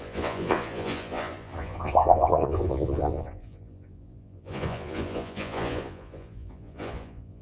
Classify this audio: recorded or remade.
remade